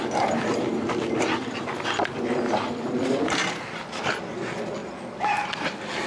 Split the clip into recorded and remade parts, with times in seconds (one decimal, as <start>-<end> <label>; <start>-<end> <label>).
0.0-6.1 recorded